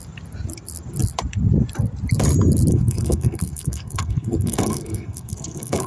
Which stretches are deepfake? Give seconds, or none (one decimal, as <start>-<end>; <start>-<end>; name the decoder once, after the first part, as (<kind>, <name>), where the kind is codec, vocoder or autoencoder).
2.7-5.9 (codec, SNAC)